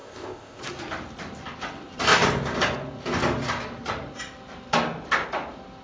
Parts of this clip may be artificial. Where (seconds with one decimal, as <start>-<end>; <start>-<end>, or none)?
0.0-0.6